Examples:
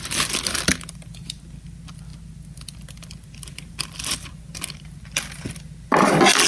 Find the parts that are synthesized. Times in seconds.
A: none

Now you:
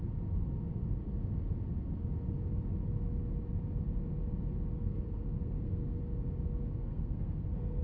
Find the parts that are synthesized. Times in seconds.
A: 4.8-6.0 (codec, SNAC); 6.8-7.8